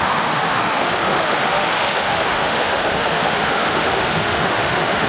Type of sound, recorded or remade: remade